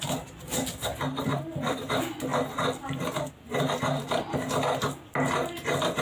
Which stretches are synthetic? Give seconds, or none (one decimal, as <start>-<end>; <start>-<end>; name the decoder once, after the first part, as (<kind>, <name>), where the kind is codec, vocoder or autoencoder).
1.3-1.9 (vocoder, BigVGAN v2)